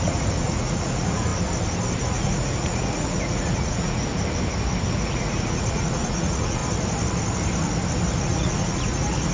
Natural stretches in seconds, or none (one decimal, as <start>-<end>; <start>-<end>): 1.3-2.0; 4.1-4.9; 6.6-8.2